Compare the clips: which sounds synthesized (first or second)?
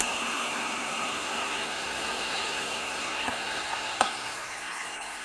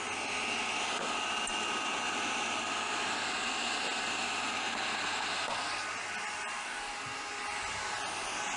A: first